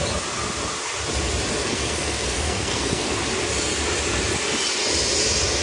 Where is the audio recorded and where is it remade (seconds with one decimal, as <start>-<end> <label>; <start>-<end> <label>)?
0.0-1.6 recorded; 1.6-3.2 remade; 3.2-5.6 recorded

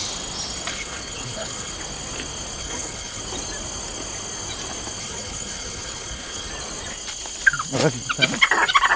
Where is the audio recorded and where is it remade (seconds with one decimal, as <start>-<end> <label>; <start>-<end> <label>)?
0.0-0.7 recorded; 0.7-1.7 remade; 1.7-2.6 recorded; 2.6-3.2 remade; 3.2-5.0 recorded; 5.0-6.5 remade; 6.5-9.0 recorded